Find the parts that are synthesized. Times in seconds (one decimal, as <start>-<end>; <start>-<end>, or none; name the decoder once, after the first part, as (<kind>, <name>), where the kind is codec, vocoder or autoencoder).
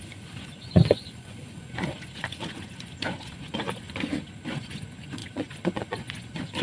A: 0.0-6.6 (vocoder, Vocos)